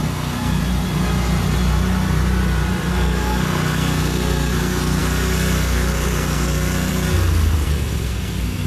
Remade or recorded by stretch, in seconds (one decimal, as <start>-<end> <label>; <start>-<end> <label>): 0.0-0.6 remade; 0.6-2.9 recorded; 2.9-8.7 remade